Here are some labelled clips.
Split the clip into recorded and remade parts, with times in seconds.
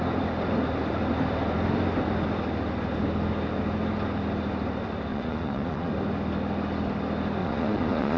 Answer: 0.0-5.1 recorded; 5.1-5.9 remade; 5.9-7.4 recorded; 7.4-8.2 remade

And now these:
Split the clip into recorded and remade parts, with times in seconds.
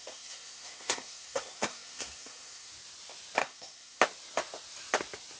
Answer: 0.0-2.7 remade; 2.7-3.4 recorded; 3.4-4.0 remade; 4.0-5.4 recorded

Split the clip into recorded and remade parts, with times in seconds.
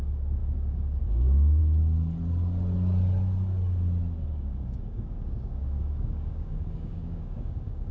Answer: 0.0-0.4 remade; 0.4-1.0 recorded; 1.0-1.6 remade; 1.6-4.8 recorded; 4.8-7.9 remade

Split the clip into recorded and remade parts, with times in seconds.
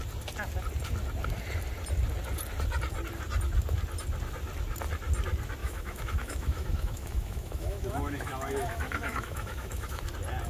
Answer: 0.0-5.6 recorded; 5.6-10.1 remade; 10.1-10.5 recorded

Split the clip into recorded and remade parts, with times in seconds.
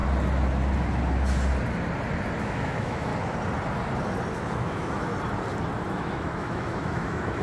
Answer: 0.0-2.4 recorded; 2.4-3.1 remade; 3.1-4.3 recorded; 4.3-5.1 remade; 5.1-5.9 recorded; 5.9-7.4 remade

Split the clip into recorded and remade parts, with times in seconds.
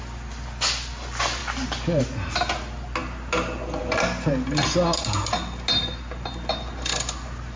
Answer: 0.0-7.6 recorded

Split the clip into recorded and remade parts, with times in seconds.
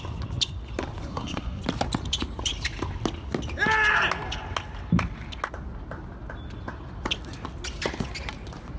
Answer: 0.0-1.1 recorded; 1.1-1.6 remade; 1.6-8.8 recorded